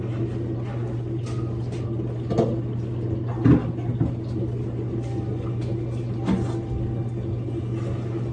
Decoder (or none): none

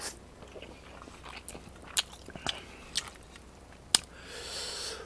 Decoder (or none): none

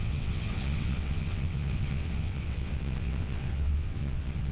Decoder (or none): vocoder, WaveNeXt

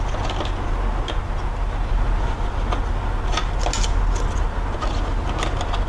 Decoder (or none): none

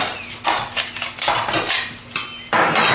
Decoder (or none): none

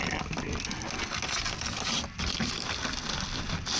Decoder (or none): none